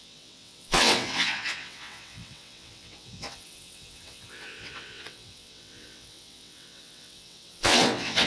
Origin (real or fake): fake